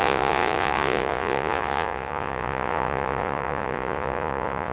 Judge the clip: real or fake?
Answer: fake